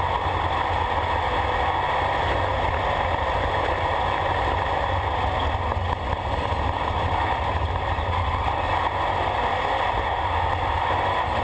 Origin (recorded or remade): recorded